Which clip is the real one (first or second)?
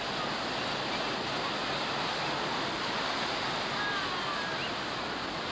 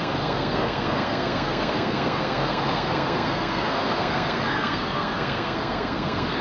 first